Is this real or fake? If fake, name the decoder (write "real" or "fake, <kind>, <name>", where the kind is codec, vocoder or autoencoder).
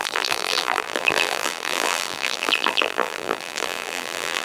fake, vocoder, BigVGAN v2